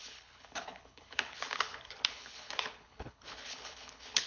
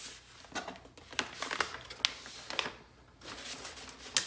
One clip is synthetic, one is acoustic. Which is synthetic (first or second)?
first